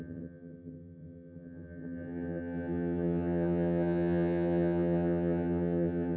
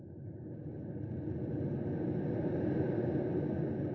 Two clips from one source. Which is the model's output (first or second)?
first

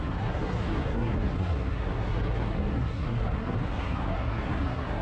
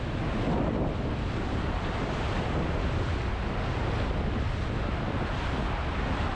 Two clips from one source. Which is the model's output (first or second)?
first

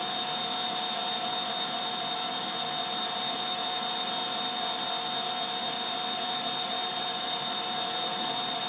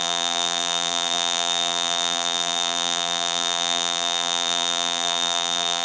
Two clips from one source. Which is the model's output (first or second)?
second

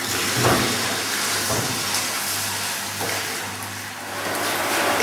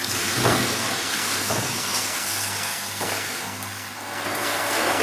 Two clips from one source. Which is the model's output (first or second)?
second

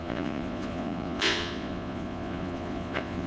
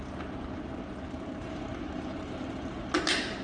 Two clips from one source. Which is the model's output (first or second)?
first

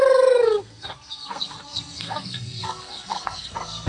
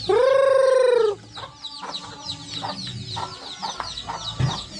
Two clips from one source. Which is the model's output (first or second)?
first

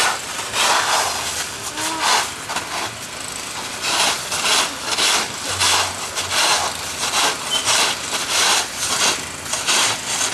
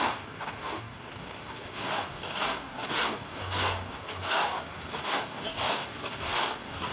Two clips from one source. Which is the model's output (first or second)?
second